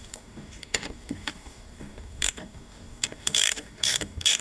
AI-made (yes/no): yes